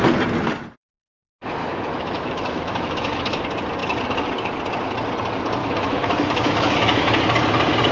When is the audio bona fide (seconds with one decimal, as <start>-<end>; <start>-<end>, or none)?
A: 0.0-1.6; 3.4-5.6; 7.2-7.9